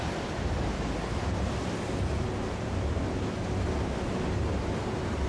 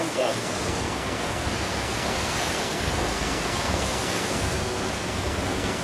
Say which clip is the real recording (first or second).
first